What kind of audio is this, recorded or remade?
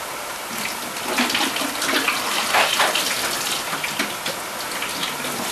recorded